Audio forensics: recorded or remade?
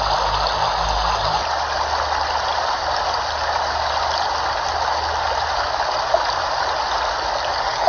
recorded